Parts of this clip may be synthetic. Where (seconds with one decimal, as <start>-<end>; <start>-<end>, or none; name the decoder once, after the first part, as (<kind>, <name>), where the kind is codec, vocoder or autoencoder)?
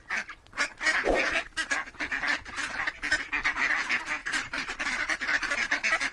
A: 4.2-4.8 (vocoder, BigVGAN v2)